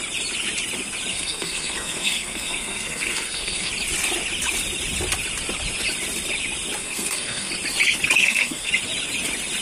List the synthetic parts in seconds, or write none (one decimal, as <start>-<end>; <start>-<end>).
1.1-3.7; 6.8-7.5; 8.2-8.7